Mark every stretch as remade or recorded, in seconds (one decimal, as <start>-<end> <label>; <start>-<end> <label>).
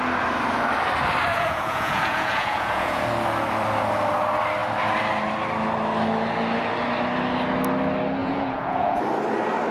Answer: 0.0-1.3 recorded; 1.3-3.0 remade; 3.0-8.2 recorded; 8.2-9.0 remade; 9.0-9.7 recorded